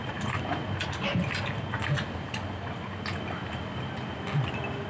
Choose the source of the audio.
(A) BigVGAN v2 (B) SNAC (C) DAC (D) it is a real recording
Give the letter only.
D